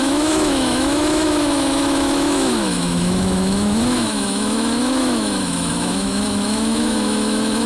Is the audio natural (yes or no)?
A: no